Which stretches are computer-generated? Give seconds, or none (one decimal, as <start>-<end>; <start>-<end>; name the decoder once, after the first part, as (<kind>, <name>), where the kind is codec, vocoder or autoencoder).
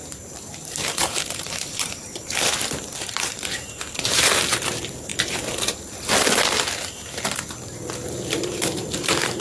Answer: 0.0-5.1 (vocoder, BigVGAN v2); 8.3-9.4